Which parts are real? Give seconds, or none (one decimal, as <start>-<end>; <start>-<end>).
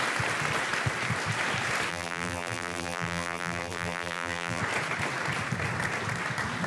0.0-1.9; 4.6-6.7